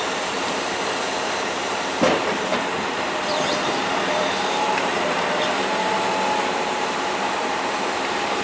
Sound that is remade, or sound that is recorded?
remade